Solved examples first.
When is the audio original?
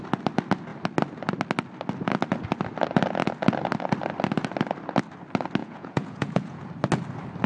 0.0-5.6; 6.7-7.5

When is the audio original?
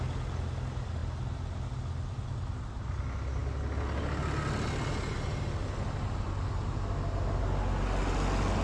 0.0-8.6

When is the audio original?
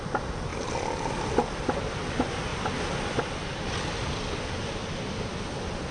0.0-5.9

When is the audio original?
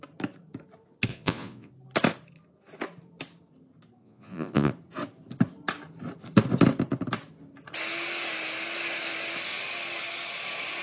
0.0-1.1; 1.7-4.0; 4.7-10.8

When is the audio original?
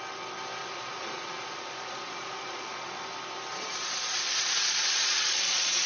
0.0-0.6; 3.1-3.5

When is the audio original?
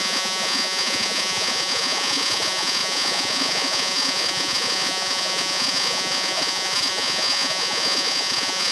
none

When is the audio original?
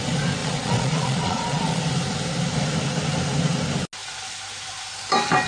0.0-0.4; 1.8-5.5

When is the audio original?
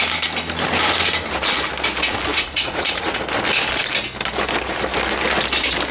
0.0-2.3; 3.2-5.9